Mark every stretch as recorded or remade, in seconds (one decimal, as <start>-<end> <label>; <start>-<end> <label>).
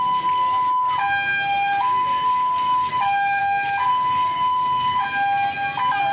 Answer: 0.0-1.3 recorded; 1.3-3.4 remade; 3.4-3.9 recorded; 3.9-5.0 remade; 5.0-6.1 recorded